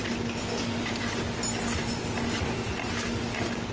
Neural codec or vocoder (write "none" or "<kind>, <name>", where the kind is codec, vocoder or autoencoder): none